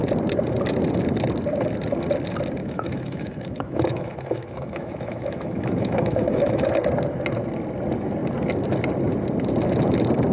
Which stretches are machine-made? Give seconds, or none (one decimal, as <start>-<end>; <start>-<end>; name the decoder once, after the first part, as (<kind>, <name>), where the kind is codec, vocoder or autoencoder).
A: 2.6-6.7 (autoencoder, DAC-VAE)